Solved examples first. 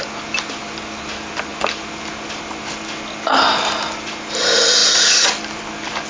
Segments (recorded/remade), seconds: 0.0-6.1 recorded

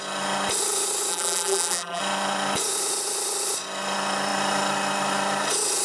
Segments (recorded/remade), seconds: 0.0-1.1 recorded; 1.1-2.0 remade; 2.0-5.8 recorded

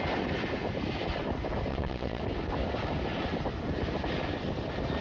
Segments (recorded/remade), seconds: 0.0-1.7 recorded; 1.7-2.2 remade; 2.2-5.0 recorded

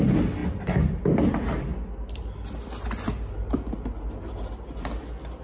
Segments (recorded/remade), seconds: 0.0-5.4 recorded

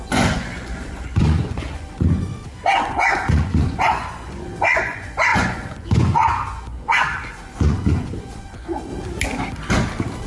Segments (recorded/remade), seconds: 0.0-8.9 remade; 8.9-10.3 recorded

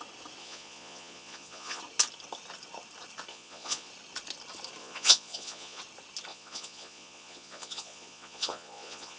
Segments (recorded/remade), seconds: 0.0-0.4 recorded; 0.4-1.8 remade; 1.8-3.3 recorded; 3.3-3.9 remade; 3.9-4.8 recorded; 4.8-5.8 remade; 5.8-6.3 recorded; 6.3-9.2 remade

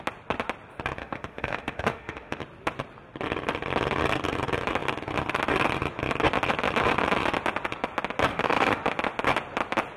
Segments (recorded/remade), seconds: 0.0-1.0 recorded; 1.0-2.4 remade; 2.4-8.3 recorded; 8.3-8.8 remade; 8.8-10.0 recorded